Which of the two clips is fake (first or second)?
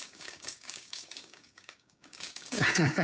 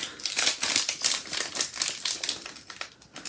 first